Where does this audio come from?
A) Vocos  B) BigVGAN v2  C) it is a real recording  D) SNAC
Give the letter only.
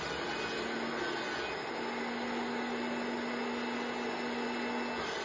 C